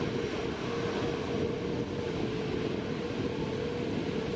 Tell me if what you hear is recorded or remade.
recorded